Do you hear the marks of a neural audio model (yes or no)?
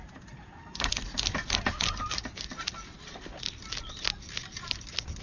no